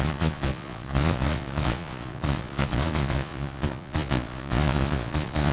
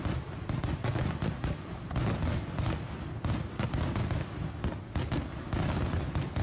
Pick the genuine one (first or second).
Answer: second